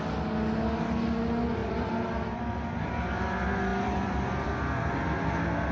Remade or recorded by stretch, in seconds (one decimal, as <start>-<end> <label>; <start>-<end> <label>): 0.0-1.6 recorded; 1.6-2.9 remade; 2.9-3.7 recorded; 3.7-4.9 remade; 4.9-5.7 recorded